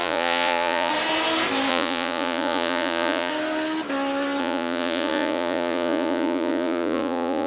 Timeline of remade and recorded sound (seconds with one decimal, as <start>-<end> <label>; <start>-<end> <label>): 0.0-0.9 remade; 0.9-1.7 recorded; 1.7-3.3 remade; 3.3-4.4 recorded; 4.4-7.5 remade